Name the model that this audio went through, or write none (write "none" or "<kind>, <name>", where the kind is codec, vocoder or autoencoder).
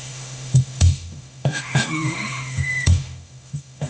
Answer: autoencoder, DAC-VAE